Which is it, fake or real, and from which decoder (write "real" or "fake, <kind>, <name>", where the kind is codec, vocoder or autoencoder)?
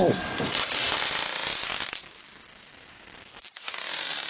real